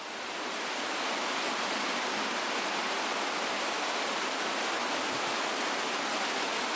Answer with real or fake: real